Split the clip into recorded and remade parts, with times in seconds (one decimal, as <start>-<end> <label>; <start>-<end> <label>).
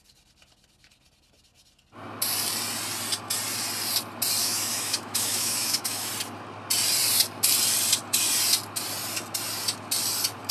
0.0-4.4 recorded; 4.4-6.1 remade; 6.1-10.5 recorded